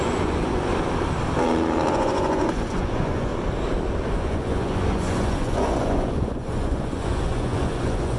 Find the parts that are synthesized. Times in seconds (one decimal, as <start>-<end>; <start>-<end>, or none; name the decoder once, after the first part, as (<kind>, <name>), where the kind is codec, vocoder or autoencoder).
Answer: 0.0-0.7 (vocoder, Vocos); 1.9-3.3; 4.1-8.2